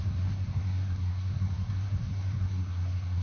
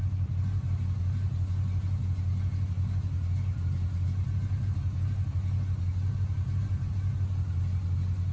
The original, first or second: second